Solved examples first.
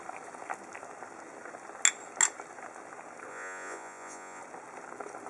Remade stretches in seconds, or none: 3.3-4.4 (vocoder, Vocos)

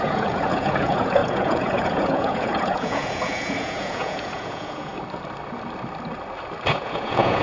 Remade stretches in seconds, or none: 0.0-4.9 (vocoder, Vocos); 6.7-7.4

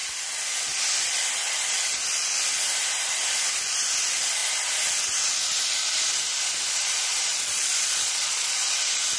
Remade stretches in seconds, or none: 7.3-8.7 (vocoder, Vocos)

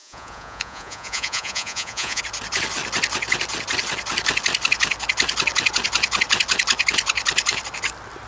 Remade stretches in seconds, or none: 0.0-2.2 (vocoder, Vocos)

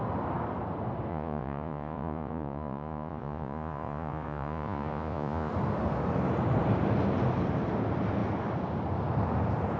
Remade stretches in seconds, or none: 1.1-5.5 (vocoder, Vocos)

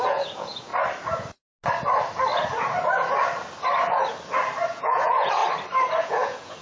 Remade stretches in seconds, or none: 0.0-0.7 (vocoder, Vocos); 4.7-5.4; 6.0-6.6

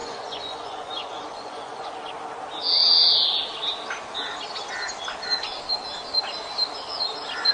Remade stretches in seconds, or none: 0.0-2.0 (vocoder, Vocos)